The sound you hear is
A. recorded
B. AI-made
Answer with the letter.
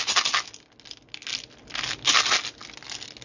A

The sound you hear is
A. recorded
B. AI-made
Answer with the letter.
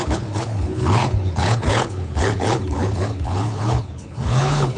B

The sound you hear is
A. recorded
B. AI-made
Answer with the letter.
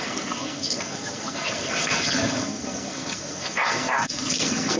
B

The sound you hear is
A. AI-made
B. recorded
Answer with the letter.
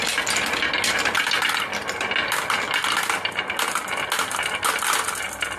B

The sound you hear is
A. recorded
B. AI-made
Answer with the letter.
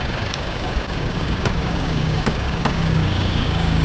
B